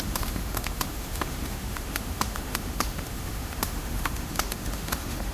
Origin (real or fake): fake